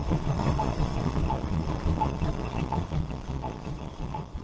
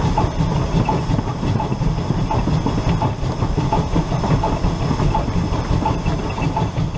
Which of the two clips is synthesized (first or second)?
first